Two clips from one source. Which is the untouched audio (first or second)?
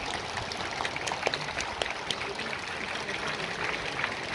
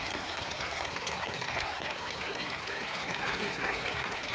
first